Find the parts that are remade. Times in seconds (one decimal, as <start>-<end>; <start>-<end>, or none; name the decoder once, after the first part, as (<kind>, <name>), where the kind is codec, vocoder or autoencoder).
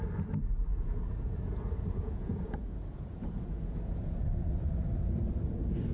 0.7-4.2 (vocoder, Vocos)